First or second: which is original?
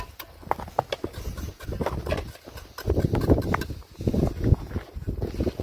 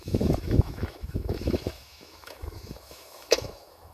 first